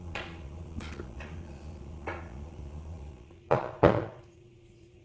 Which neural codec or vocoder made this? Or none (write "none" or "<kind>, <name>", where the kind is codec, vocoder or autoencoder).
vocoder, Vocos